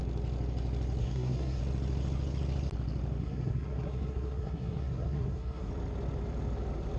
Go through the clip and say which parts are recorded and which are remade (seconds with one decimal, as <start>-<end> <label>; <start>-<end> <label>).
0.0-1.0 recorded; 1.0-1.6 remade; 1.6-3.2 recorded; 3.2-5.7 remade; 5.7-7.0 recorded